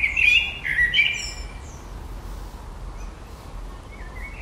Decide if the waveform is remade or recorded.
recorded